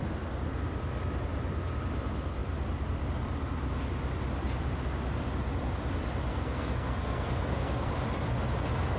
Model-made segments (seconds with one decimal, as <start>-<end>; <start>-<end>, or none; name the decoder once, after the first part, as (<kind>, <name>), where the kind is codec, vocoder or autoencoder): 6.3-7.9 (codec, SNAC)